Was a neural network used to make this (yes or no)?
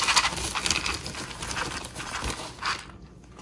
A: no